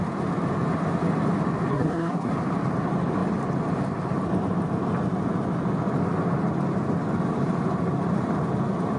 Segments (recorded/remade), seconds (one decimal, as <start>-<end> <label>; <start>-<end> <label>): 0.0-1.7 recorded; 1.7-2.3 remade; 2.3-9.0 recorded